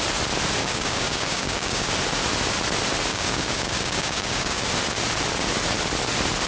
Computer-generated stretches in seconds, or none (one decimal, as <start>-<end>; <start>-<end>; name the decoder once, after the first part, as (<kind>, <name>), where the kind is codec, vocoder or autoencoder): 0.6-1.9 (codec, DAC); 3.1-4.7